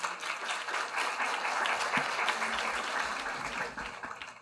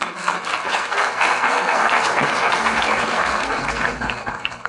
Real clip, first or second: first